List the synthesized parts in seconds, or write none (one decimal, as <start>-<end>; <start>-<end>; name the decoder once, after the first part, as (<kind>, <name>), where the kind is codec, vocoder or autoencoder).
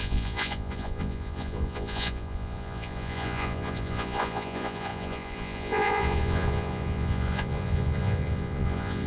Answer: 0.0-9.1 (vocoder, Vocos)